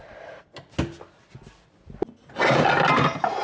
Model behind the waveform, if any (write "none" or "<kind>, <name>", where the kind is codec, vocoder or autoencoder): none